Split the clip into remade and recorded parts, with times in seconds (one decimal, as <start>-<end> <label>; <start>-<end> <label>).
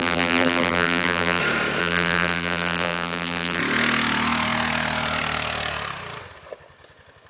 0.0-1.4 remade; 1.4-1.8 recorded; 1.8-3.6 remade; 3.6-7.3 recorded